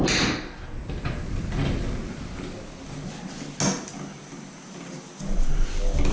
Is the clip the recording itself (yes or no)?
yes